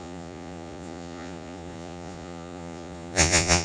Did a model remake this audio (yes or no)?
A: yes